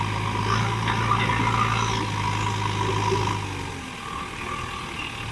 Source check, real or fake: real